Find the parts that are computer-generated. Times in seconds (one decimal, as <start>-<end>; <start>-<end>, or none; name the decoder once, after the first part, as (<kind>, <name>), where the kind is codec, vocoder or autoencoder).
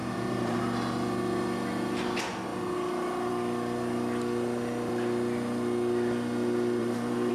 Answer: 0.0-0.6 (vocoder, BigVGAN v2); 6.8-7.3